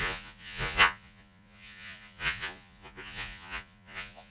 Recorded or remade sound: remade